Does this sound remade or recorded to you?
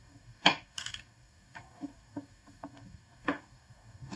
remade